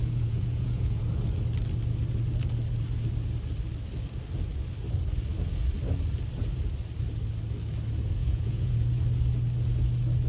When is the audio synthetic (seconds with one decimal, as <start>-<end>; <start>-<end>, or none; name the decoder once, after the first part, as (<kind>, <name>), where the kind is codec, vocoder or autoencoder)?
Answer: 0.0-1.0 (vocoder, Vocos); 8.2-8.9